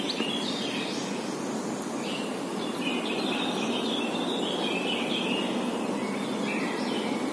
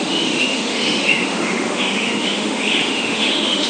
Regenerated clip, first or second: second